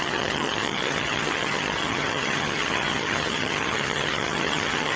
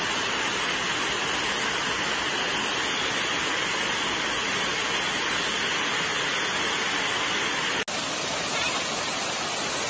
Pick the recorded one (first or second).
second